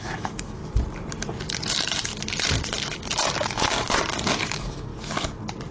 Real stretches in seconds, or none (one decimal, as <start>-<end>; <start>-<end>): 0.6-1.7; 2.1-4.4; 4.9-5.7